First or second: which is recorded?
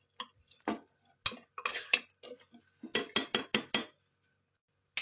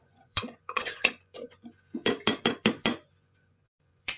first